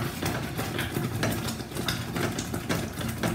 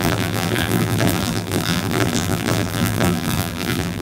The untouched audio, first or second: first